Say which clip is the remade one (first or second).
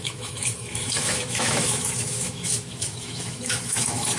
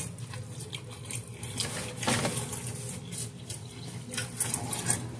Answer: first